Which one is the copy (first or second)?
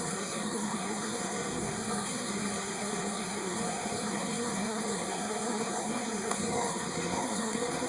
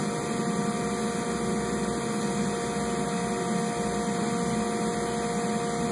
first